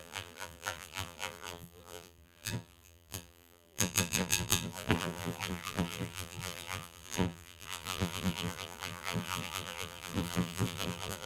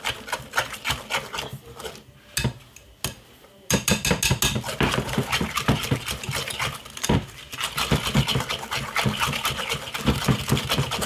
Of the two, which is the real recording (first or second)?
second